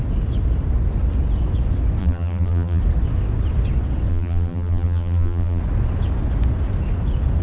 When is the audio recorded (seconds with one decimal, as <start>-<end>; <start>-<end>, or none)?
0.0-2.0; 2.8-4.1; 5.6-7.4